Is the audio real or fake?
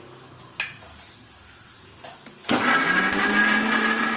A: real